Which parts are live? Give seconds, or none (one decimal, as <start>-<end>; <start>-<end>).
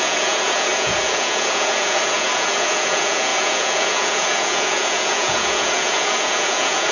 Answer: none